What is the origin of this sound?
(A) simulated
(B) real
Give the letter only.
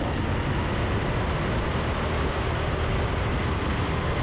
B